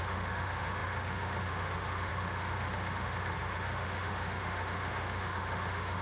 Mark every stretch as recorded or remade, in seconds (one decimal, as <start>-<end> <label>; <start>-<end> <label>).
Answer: 0.0-6.0 remade